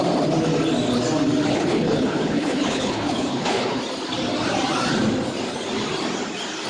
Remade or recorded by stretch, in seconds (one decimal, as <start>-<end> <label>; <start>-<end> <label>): 0.0-1.5 recorded; 1.5-3.8 remade; 3.8-6.7 recorded